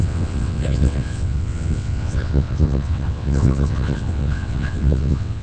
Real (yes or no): no